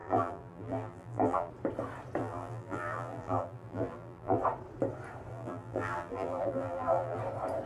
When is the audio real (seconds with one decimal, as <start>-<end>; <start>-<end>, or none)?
1.5-2.2; 4.4-5.3; 7.2-7.7